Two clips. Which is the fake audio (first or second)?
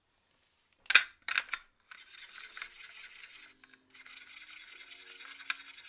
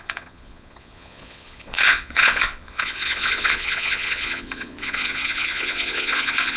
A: second